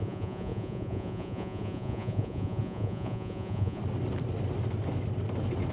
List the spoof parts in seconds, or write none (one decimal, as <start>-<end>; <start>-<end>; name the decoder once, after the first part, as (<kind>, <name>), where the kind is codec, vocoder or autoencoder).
0.0-3.8 (vocoder, Vocos)